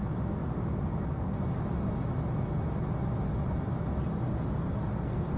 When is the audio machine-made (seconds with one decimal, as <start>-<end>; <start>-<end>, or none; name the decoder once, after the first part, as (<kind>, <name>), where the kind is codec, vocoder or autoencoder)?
4.8-5.4 (codec, SNAC)